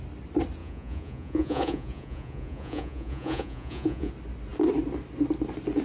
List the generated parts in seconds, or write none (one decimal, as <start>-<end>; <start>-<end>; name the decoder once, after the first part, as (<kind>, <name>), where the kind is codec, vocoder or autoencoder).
0.6-4.1 (vocoder, Vocos)